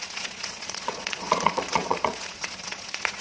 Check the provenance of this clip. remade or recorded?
remade